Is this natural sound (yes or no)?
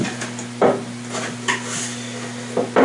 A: yes